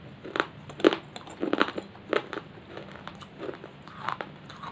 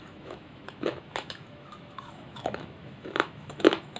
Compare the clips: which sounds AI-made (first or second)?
second